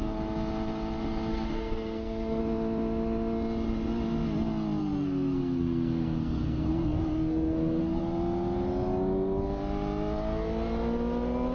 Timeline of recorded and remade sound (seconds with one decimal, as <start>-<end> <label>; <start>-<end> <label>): 0.0-1.3 recorded; 1.3-2.4 remade; 2.4-4.8 recorded; 4.8-8.0 remade; 8.0-11.5 recorded